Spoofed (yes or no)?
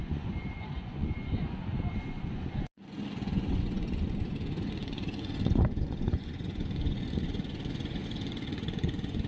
yes